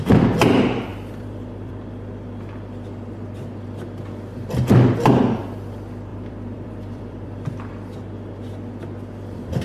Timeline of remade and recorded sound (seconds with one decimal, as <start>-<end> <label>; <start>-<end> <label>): 0.0-0.9 recorded; 0.9-1.7 remade; 1.7-6.1 recorded; 6.1-7.7 remade; 7.7-9.6 recorded